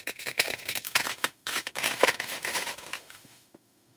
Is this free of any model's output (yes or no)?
no